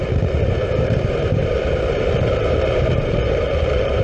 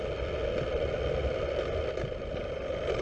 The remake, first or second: first